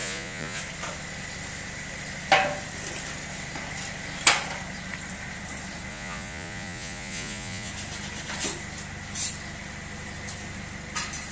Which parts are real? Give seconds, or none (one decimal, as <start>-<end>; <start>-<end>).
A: 0.6-5.9; 7.7-11.3